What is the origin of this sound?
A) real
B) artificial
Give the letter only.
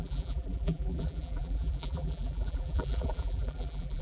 B